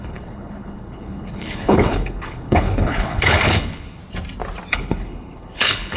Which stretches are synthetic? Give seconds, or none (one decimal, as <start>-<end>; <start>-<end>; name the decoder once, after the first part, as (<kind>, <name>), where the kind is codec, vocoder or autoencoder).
0.0-4.0 (codec, HILCodec); 4.7-6.0